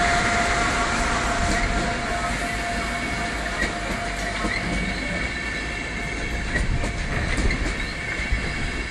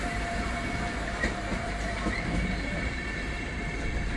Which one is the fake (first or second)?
second